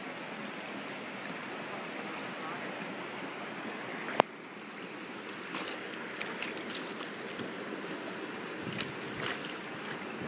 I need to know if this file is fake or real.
real